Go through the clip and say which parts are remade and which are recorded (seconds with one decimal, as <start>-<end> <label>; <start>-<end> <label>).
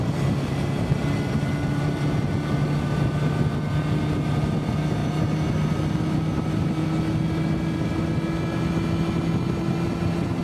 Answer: 0.0-10.4 recorded